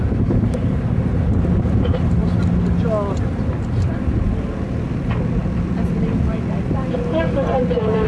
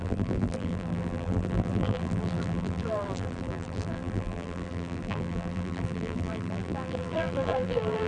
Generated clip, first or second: second